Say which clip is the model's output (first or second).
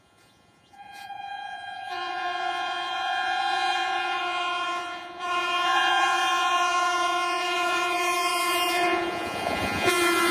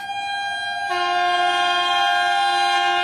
first